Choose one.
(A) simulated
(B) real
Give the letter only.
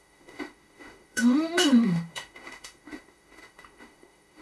A